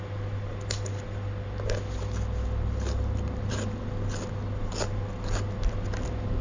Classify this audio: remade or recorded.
recorded